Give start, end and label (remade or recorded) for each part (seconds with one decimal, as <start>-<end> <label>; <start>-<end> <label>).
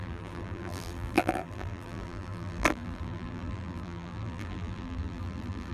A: 0.0-5.7 remade